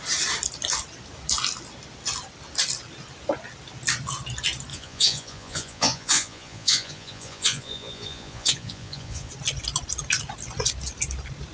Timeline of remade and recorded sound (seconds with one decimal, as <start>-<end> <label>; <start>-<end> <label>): 0.0-4.7 recorded; 4.7-9.3 remade; 9.3-11.5 recorded